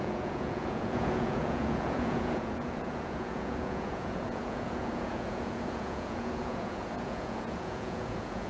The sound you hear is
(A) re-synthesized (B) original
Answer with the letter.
A